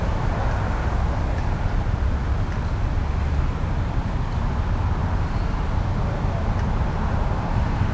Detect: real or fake real